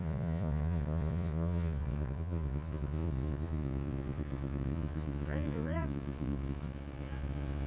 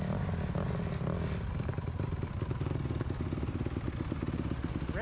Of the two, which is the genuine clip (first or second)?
second